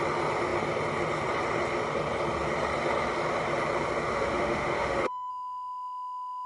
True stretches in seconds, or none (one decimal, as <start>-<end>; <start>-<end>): 0.0-4.1; 5.3-6.5